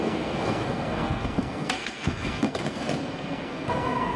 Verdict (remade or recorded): remade